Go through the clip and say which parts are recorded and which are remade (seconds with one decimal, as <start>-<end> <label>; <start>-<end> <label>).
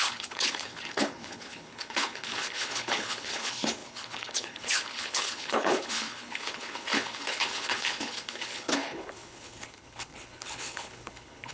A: 0.0-11.5 remade